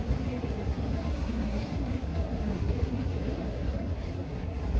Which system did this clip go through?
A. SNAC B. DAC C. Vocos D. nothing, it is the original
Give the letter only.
A